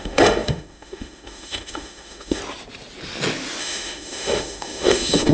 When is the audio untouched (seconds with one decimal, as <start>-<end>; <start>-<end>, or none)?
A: 2.4-3.6